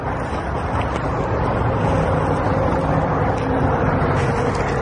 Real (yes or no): yes